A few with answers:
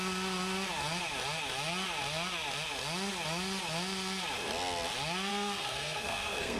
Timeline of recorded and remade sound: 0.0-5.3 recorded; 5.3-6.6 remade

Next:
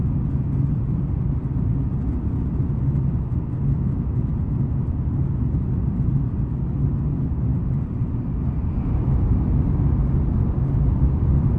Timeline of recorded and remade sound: 0.0-11.6 recorded